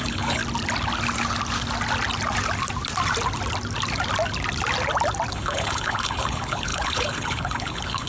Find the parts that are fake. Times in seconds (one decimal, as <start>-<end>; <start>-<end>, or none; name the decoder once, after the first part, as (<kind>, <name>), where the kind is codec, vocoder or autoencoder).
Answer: 0.0-0.4 (codec, HILCodec); 5.3-8.1